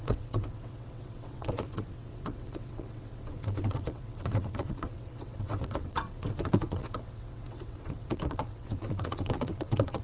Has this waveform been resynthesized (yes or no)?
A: yes